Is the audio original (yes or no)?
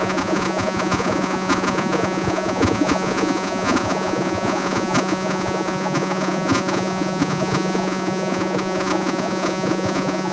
no